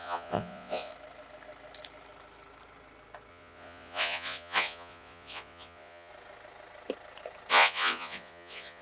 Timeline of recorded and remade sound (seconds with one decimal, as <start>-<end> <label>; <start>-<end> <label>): 0.0-0.9 remade; 0.9-3.3 recorded; 3.3-6.1 remade; 6.1-7.5 recorded; 7.5-8.8 remade